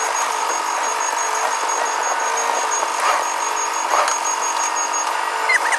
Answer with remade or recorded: recorded